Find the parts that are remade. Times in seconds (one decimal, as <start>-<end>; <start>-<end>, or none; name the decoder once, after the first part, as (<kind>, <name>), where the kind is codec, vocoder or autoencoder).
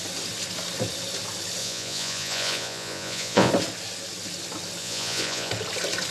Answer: 1.6-3.5 (vocoder, Vocos); 4.8-5.5